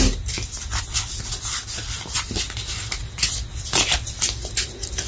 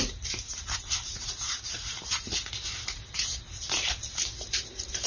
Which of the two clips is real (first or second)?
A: first